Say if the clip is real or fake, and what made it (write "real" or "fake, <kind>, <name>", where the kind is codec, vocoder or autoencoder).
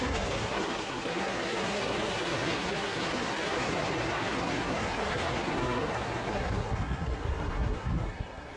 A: fake, codec, SNAC